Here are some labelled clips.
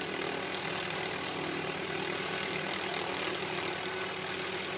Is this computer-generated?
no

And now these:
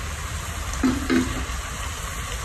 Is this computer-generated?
no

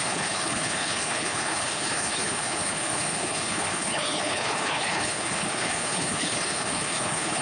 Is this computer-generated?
yes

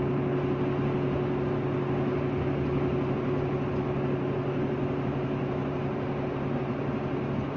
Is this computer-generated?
no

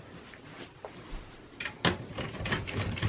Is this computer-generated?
no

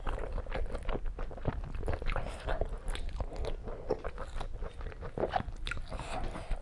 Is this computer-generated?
no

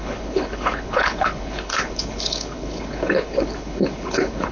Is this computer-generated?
yes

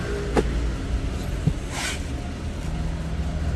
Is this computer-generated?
no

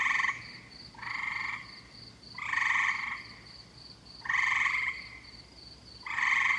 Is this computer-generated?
no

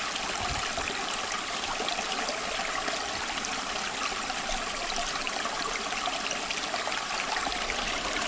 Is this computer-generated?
no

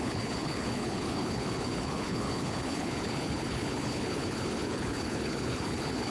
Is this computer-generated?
yes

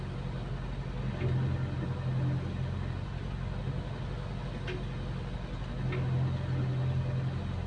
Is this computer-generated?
no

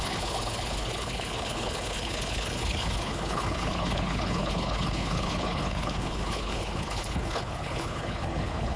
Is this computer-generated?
yes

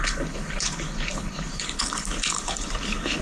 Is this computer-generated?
yes